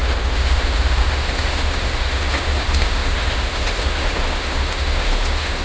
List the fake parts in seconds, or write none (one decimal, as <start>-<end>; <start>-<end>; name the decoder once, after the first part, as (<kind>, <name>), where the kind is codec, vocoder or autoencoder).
0.0-5.6 (autoencoder, DAC-VAE)